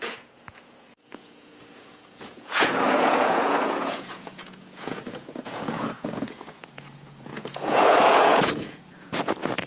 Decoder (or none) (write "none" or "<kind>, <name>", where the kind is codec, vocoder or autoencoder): vocoder, Vocos